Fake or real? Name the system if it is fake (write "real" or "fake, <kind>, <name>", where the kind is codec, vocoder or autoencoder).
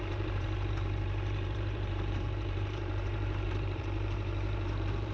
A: fake, vocoder, BigVGAN v2